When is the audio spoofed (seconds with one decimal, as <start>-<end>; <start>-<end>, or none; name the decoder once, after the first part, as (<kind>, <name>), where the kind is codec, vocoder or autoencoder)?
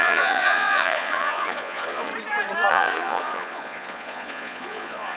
0.0-2.1 (vocoder, Vocos); 2.7-5.2